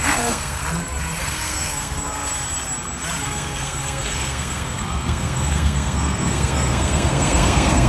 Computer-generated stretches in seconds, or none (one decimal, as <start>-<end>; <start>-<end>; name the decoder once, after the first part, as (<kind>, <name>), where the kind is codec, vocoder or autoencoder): 0.0-0.6 (codec, SNAC); 1.2-2.2; 3.2-7.9